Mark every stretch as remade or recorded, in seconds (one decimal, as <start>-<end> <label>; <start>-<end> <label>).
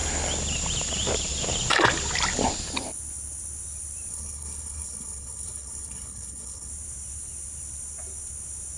0.0-4.1 recorded; 4.1-6.7 remade; 6.7-8.8 recorded